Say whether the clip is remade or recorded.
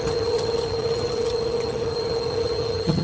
remade